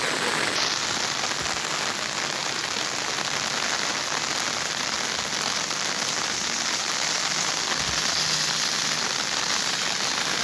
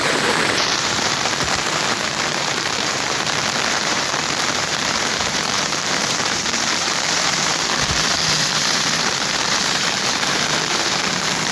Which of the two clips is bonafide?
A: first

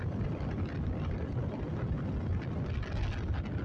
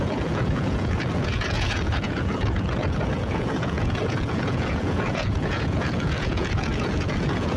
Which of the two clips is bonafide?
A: first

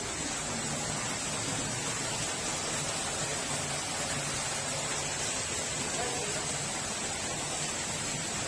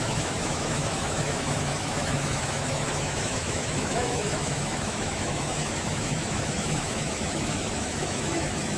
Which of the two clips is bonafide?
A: first